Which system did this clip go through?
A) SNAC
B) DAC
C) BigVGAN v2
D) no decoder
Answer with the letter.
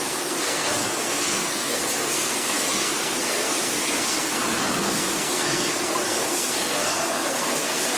A